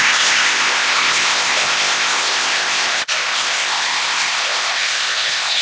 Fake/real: fake